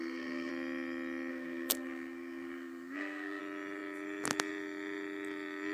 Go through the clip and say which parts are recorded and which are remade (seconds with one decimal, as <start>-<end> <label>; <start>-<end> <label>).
0.0-0.5 remade; 0.5-1.3 recorded; 1.3-3.4 remade; 3.4-5.7 recorded